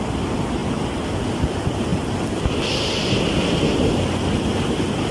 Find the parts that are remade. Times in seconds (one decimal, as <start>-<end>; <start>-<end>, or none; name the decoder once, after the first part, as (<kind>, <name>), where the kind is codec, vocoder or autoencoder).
none